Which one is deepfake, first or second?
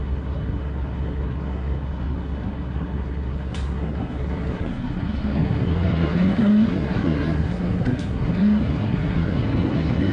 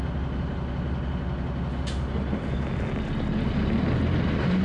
first